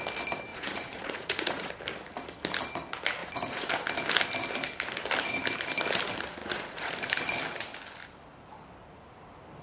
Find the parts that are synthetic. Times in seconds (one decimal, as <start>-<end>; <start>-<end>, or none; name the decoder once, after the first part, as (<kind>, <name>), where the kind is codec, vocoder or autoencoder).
0.5-1.7 (vocoder, Vocos); 3.2-3.7; 6.4-6.9